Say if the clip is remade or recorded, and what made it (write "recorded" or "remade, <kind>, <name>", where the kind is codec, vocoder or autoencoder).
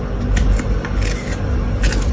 recorded